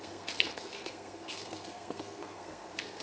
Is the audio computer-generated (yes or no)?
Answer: yes